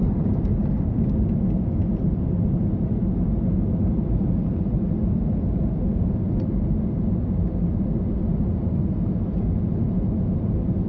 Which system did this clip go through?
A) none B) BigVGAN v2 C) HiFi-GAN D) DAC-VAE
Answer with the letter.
A